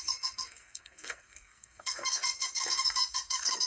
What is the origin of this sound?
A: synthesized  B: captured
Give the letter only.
A